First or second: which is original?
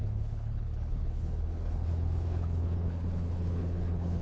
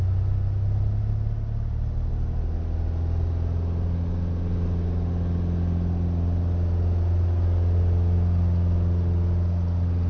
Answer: second